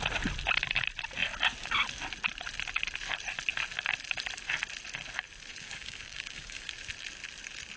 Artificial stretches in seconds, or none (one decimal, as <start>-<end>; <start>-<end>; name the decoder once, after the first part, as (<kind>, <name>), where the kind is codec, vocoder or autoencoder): 5.5-6.7 (codec, DAC)